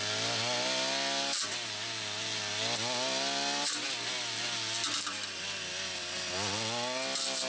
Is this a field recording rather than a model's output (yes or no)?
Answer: yes